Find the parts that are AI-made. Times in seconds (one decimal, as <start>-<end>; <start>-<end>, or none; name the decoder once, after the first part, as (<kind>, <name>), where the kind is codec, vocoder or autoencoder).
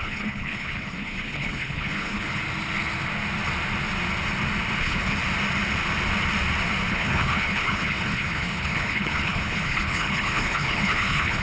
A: 0.0-2.4 (codec, HILCodec); 4.8-5.2; 6.9-11.4